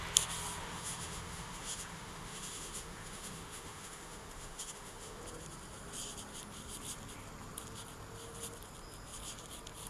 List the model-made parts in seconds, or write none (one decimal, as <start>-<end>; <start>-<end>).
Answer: 0.6-5.2